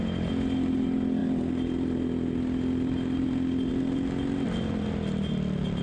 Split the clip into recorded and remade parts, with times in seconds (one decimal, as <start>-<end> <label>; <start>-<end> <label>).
0.0-5.8 recorded